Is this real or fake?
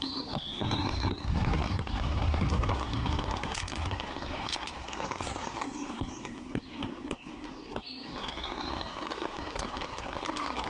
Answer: fake